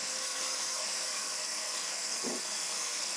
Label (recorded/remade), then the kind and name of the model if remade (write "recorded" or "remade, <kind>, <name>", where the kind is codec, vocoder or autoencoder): remade, codec, SNAC